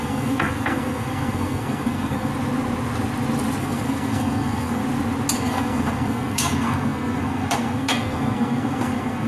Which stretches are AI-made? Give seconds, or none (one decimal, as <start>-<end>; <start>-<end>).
0.0-2.3; 3.6-4.8; 5.4-9.3